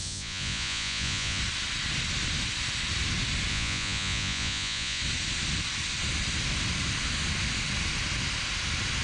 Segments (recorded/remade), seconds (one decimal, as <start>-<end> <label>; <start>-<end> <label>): 0.0-1.4 remade; 1.4-3.5 recorded; 3.5-5.0 remade; 5.0-9.0 recorded